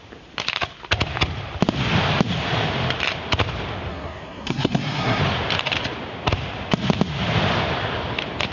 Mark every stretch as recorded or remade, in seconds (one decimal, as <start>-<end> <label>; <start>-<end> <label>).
0.0-3.9 recorded; 3.9-5.2 remade; 5.2-8.5 recorded